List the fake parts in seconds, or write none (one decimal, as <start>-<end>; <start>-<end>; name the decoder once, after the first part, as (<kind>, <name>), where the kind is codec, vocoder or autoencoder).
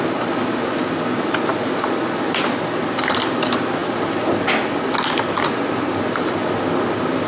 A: none